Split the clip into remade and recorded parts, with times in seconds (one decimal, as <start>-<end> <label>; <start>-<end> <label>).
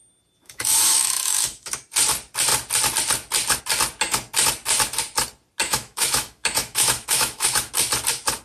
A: 0.0-0.4 recorded; 0.4-1.8 remade; 1.8-5.6 recorded; 5.6-7.7 remade; 7.7-8.4 recorded